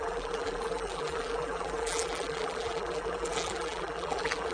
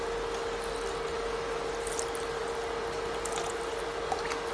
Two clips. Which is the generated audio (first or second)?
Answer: first